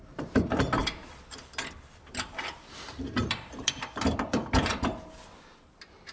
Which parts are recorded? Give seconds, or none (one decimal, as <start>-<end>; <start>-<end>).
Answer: 0.0-0.8; 2.7-3.2; 4.6-6.1